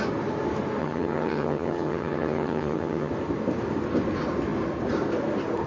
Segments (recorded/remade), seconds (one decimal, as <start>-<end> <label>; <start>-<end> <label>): 0.0-0.8 recorded; 0.8-3.1 remade; 3.1-5.7 recorded